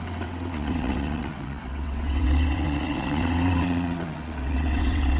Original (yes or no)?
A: no